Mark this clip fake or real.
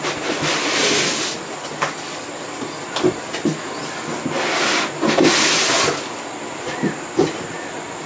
real